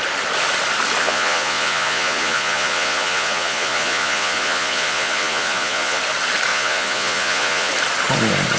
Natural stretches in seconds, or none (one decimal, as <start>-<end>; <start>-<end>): 0.0-1.0; 6.0-6.5; 7.7-8.6